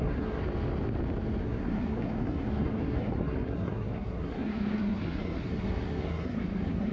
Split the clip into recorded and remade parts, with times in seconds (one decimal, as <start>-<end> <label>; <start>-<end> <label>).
0.0-0.4 remade; 0.4-1.4 recorded; 1.4-6.9 remade